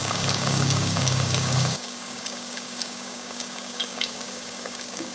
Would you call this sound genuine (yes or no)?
no